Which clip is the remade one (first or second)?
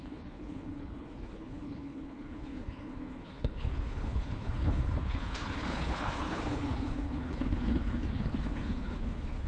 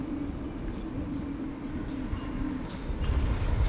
first